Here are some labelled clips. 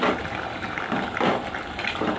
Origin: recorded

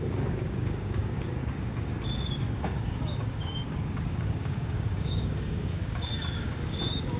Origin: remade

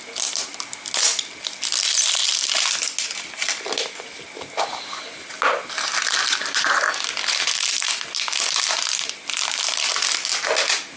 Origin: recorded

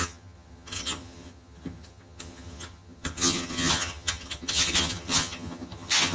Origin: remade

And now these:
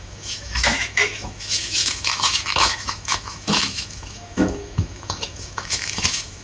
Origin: remade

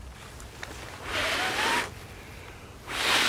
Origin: recorded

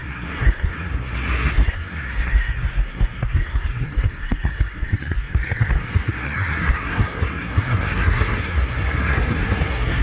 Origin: remade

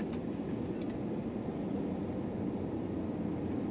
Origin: recorded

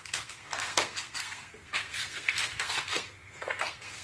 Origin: remade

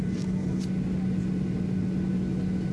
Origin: recorded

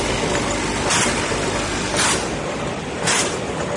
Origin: recorded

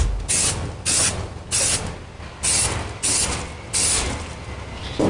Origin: recorded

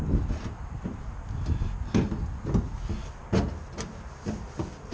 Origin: recorded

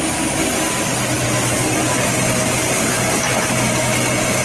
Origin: recorded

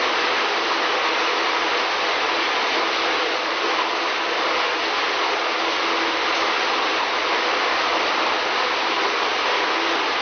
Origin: recorded